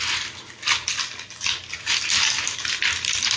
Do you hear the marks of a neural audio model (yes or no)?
no